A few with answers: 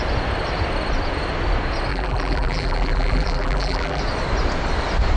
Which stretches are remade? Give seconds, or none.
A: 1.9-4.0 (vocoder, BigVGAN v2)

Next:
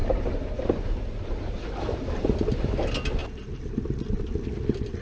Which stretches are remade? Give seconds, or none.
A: 0.0-2.7 (vocoder, BigVGAN v2)

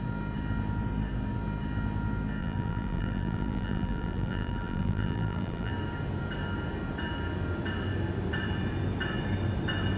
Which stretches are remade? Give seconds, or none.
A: 2.4-5.7 (vocoder, BigVGAN v2)

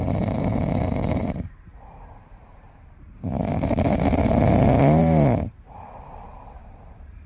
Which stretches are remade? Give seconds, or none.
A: 0.0-7.3 (vocoder, BigVGAN v2)

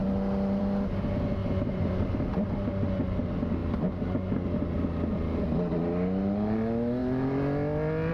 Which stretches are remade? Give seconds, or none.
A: 1.4-2.5 (vocoder, BigVGAN v2)

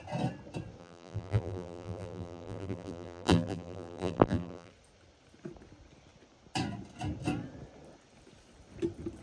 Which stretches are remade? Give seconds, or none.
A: 0.8-4.7 (vocoder, BigVGAN v2)

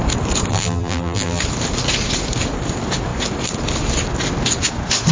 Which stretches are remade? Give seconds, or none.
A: 0.5-1.4 (vocoder, BigVGAN v2)